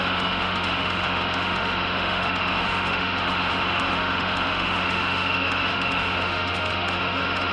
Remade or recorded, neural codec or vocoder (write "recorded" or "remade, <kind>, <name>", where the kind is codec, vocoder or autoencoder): remade, autoencoder, DAC-VAE